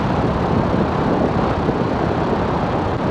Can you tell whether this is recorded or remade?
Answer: recorded